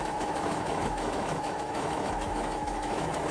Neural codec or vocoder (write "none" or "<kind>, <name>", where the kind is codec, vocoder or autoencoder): autoencoder, DAC-VAE